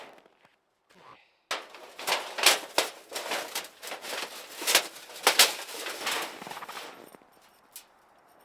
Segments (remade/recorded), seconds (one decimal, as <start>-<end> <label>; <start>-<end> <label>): 0.0-8.4 recorded